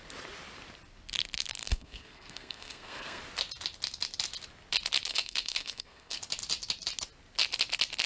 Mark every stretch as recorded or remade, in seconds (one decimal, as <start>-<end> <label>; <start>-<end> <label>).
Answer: 0.0-1.6 recorded; 1.6-3.2 remade; 3.2-5.1 recorded; 5.1-6.2 remade; 6.2-8.1 recorded